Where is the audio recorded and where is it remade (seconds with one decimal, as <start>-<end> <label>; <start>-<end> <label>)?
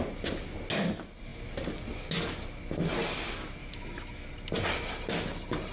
0.0-3.6 recorded; 3.6-4.3 remade; 4.3-5.7 recorded